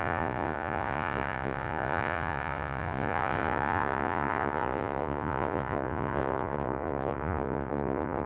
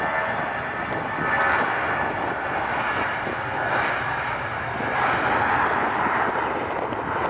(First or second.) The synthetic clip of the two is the first